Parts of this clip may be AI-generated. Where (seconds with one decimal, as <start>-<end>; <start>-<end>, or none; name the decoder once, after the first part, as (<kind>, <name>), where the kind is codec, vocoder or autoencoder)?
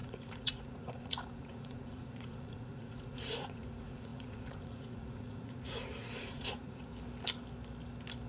0.0-6.9 (vocoder, Vocos)